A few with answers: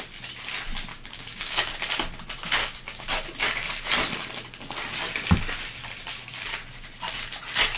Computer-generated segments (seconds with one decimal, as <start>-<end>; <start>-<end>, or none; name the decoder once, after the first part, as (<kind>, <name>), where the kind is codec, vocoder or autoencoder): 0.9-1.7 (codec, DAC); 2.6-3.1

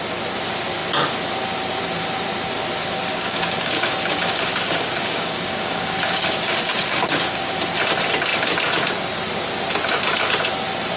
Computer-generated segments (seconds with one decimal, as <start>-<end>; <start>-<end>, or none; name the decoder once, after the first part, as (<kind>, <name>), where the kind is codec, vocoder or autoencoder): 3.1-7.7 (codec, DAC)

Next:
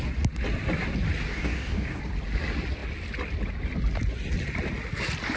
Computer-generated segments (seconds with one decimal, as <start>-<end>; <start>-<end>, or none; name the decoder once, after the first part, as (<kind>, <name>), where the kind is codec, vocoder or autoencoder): 1.3-2.0 (codec, DAC)

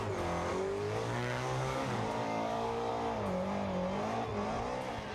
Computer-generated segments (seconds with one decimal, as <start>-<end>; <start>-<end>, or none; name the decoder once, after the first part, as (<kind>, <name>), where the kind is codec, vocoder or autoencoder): 0.5-2.9 (codec, DAC)